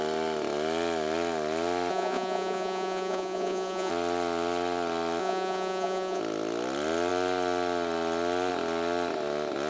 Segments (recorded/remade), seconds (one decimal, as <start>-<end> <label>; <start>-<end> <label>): 0.0-1.9 recorded; 1.9-3.9 remade; 3.9-5.2 recorded; 5.2-6.2 remade; 6.2-9.7 recorded